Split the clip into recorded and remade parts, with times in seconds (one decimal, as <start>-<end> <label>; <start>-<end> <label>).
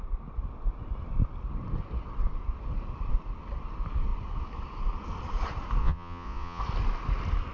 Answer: 0.0-5.8 recorded; 5.8-6.6 remade; 6.6-7.5 recorded